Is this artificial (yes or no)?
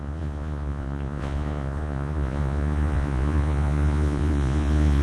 yes